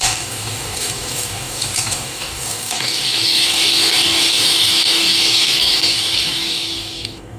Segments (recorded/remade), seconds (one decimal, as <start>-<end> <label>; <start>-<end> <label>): 0.0-7.4 remade